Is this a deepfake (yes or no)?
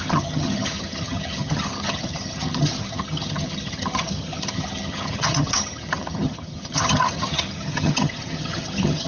yes